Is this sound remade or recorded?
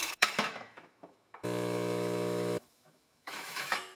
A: remade